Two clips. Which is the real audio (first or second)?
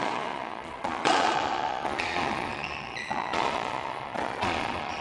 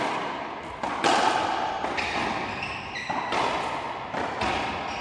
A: second